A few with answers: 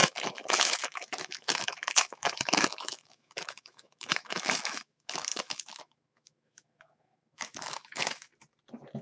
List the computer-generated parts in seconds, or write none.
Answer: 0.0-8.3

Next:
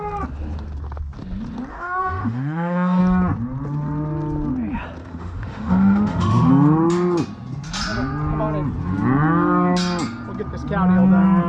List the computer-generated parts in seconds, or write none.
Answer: 1.7-3.0; 5.0-6.5

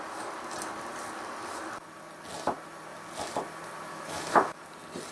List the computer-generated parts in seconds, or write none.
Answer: 3.9-4.6

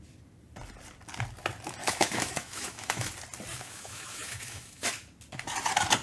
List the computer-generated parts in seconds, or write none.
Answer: 1.8-3.1; 3.5-4.9

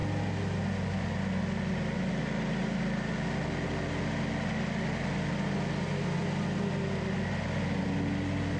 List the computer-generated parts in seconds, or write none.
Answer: none